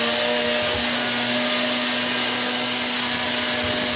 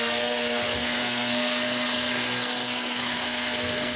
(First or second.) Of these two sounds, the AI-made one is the second